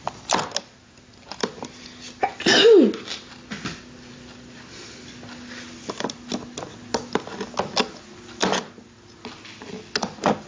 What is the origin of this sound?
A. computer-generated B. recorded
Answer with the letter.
B